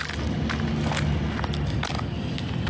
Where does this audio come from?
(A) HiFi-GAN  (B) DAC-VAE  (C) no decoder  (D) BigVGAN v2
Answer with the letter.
C